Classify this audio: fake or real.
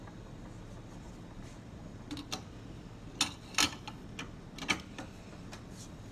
real